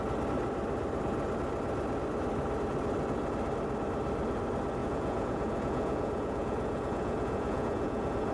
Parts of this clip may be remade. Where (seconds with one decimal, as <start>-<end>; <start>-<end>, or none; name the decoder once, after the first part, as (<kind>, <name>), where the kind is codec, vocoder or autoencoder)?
4.8-8.3 (vocoder, Vocos)